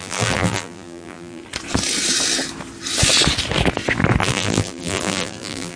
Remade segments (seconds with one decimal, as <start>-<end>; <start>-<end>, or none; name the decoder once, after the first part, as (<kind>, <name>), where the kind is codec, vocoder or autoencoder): 0.0-1.4 (vocoder, BigVGAN v2); 4.2-5.8